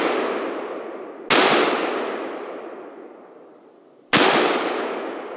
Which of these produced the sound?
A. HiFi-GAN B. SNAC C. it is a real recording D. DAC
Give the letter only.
C